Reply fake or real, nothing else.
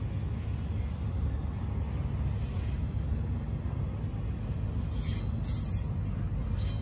real